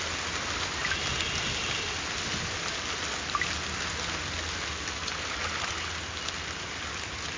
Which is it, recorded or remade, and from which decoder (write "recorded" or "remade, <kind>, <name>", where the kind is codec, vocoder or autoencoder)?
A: recorded